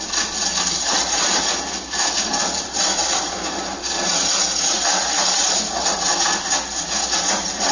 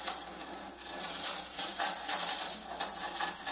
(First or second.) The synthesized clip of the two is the first